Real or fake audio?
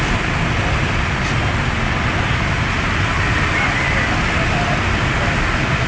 real